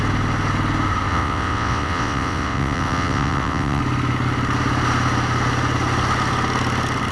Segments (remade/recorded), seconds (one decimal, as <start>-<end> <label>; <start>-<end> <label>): 0.0-1.1 recorded; 1.1-3.8 remade; 3.8-7.1 recorded